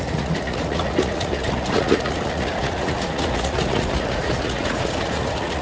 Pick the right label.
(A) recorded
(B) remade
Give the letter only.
B